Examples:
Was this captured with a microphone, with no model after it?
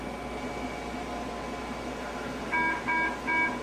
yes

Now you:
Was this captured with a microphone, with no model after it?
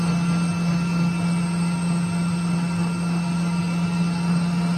yes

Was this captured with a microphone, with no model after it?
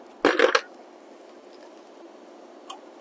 yes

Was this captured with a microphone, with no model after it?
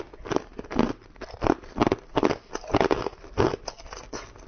yes